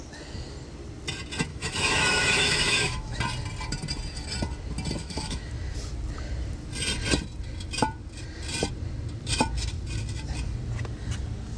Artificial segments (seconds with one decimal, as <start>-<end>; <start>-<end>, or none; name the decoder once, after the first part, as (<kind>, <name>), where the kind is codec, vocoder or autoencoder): 1.5-3.2 (autoencoder, DAC-VAE); 5.0-5.5